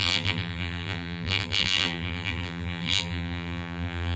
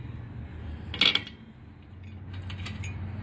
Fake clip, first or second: first